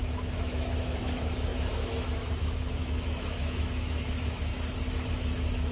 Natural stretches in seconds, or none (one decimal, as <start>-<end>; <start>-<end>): 4.5-5.1